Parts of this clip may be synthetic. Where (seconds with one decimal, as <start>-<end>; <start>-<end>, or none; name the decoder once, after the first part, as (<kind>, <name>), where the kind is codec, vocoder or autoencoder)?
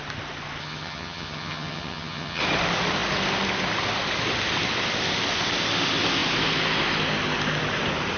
0.6-2.4 (vocoder, HiFi-GAN)